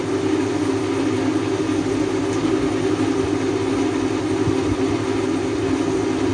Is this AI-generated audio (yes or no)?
no